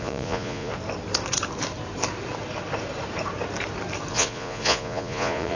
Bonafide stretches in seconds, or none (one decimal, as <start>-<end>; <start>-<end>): 0.7-4.1

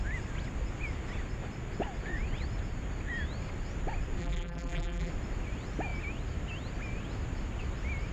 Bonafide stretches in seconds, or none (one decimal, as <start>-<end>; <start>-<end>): 0.0-4.2; 5.1-8.1

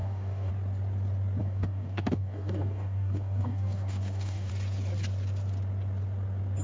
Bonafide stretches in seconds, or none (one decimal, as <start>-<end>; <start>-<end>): 0.5-1.4; 4.5-6.6